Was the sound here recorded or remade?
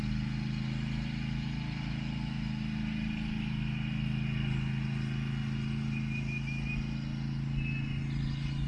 recorded